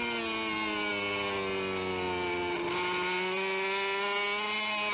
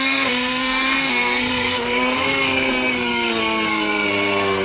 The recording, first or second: first